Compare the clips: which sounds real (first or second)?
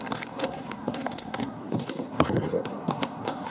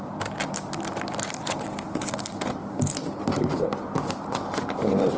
second